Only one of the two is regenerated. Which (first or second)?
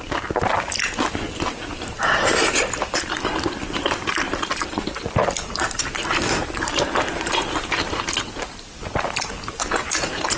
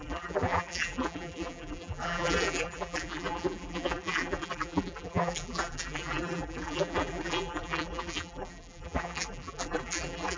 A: second